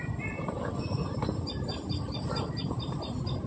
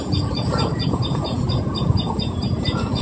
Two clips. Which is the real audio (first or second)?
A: first